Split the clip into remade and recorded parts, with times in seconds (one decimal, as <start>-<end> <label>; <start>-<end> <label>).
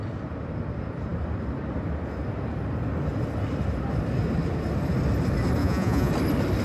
0.0-5.6 recorded; 5.6-6.1 remade; 6.1-6.6 recorded